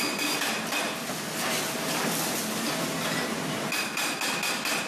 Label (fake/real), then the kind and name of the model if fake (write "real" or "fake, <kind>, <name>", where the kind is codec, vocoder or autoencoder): real